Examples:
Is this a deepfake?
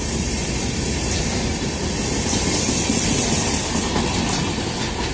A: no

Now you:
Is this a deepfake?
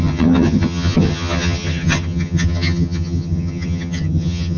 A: yes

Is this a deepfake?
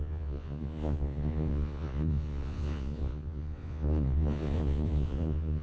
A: yes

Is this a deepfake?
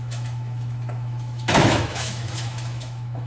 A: yes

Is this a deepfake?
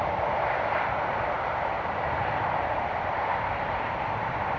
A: yes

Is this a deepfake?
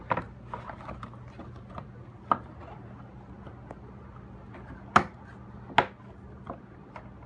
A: no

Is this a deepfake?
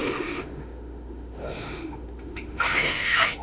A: yes